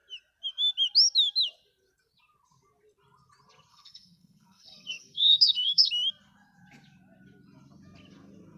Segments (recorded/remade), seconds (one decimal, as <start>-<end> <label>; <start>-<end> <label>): 0.0-3.7 recorded; 3.7-5.9 remade; 5.9-8.6 recorded